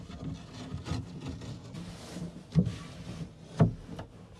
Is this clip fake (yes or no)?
no